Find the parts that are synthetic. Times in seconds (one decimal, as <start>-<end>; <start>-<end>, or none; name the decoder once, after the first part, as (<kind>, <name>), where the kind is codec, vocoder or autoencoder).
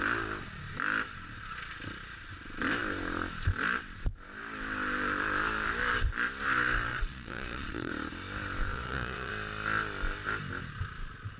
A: 6.9-7.9 (vocoder, Vocos); 8.7-9.3